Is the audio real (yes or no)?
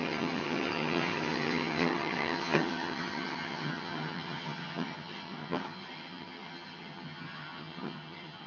no